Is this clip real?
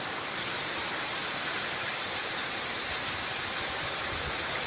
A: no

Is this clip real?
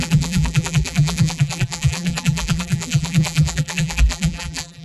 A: no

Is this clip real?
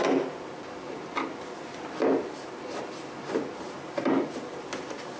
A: yes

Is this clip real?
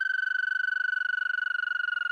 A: yes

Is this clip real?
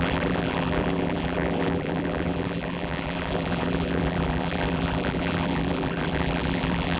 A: no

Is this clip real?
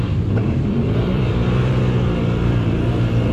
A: no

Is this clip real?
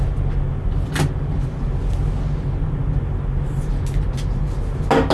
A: yes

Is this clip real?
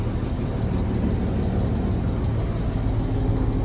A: yes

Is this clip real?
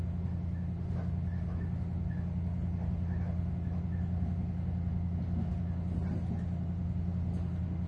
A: yes